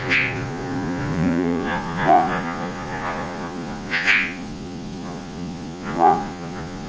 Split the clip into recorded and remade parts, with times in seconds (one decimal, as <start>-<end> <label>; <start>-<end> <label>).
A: 0.0-6.9 remade